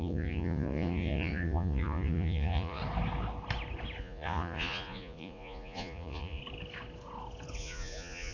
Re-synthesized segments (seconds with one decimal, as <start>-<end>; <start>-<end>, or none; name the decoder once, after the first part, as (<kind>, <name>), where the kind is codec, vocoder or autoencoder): 0.0-2.8 (vocoder, Vocos); 4.0-6.4; 7.6-8.3